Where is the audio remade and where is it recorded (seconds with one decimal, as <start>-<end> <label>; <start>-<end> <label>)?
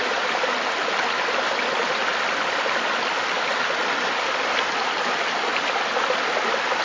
0.0-6.8 recorded